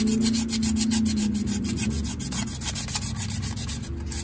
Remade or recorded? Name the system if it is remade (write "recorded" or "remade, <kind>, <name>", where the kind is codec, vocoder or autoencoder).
recorded